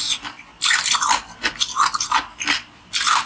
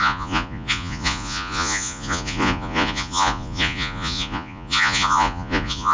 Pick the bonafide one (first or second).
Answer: first